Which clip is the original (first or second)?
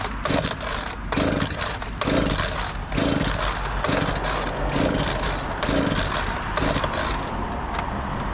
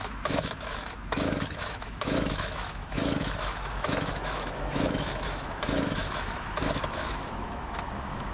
first